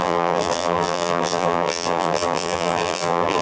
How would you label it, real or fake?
fake